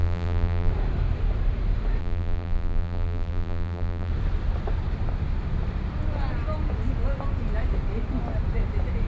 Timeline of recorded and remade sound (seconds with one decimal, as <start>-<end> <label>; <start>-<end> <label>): 0.0-0.7 remade; 0.7-2.0 recorded; 2.0-4.1 remade; 4.1-9.1 recorded